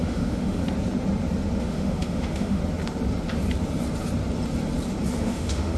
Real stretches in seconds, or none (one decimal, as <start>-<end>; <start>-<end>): 0.6-1.6; 2.6-5.2